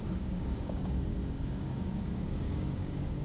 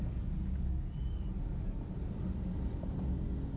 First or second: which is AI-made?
first